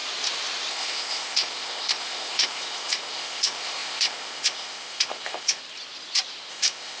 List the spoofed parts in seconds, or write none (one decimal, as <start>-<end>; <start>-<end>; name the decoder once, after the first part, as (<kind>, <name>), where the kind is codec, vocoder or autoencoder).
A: 0.7-5.6 (codec, ZipCodec); 6.5-7.0

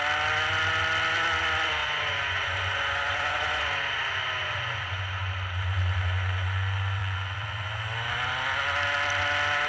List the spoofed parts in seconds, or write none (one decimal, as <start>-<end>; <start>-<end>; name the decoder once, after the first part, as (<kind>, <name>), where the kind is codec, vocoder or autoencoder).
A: 1.8-5.3 (vocoder, Vocos); 7.0-7.7

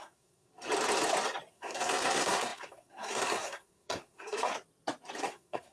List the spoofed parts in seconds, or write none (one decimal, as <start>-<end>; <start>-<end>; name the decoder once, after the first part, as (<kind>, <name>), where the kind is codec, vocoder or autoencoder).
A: 0.0-0.5 (codec, SNAC); 1.5-4.5; 5.2-5.7

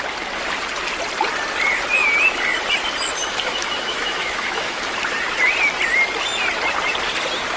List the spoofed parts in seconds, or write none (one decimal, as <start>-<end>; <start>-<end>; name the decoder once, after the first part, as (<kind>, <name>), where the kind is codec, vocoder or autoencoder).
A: 3.2-4.8 (autoencoder, DAC-VAE)

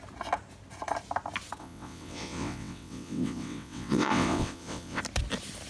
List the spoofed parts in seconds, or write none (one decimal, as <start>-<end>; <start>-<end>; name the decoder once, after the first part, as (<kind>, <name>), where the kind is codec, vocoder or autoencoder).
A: 1.6-5.0 (vocoder, WaveNeXt)

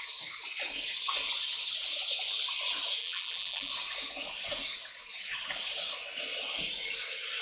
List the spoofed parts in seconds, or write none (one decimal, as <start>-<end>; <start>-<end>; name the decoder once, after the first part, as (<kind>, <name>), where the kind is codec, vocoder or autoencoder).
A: 3.0-3.7 (vocoder, BigVGAN v2)